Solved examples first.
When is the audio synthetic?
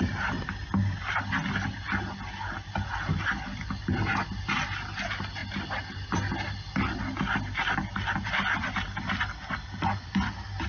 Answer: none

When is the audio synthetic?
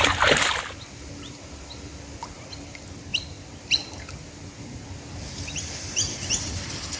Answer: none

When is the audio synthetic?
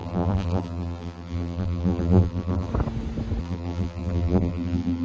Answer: 0.0-2.7 (vocoder, BigVGAN v2); 3.4-5.0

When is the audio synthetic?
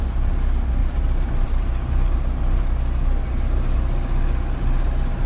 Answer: 0.8-2.8 (vocoder, BigVGAN v2)